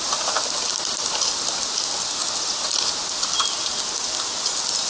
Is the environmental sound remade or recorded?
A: recorded